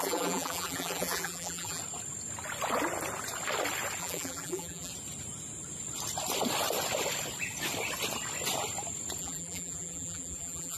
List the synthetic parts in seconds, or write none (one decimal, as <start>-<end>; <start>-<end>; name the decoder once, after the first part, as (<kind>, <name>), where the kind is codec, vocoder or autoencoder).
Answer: 0.0-1.8 (vocoder, BigVGAN v2); 4.0-4.9; 9.2-10.8